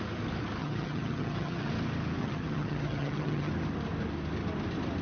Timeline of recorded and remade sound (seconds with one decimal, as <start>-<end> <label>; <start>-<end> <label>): 0.0-0.6 recorded; 0.6-1.7 remade; 1.7-2.2 recorded; 2.2-3.5 remade; 3.5-5.0 recorded